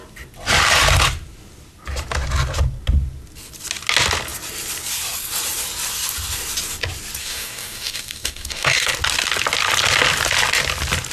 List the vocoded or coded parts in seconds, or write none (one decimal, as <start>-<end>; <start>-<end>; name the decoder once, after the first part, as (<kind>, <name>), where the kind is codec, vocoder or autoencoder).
7.2-8.9 (codec, DAC)